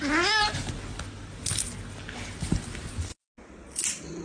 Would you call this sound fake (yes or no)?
no